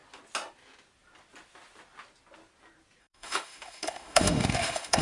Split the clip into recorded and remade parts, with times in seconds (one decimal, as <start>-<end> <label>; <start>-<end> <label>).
0.0-3.0 recorded; 3.0-5.0 remade